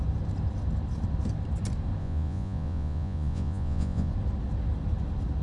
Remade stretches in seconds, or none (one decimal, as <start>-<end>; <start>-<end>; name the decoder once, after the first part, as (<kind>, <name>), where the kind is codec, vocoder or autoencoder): 2.0-4.1 (vocoder, Vocos)